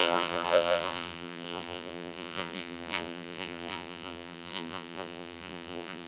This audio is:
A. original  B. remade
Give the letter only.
B